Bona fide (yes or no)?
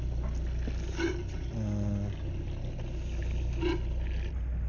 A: yes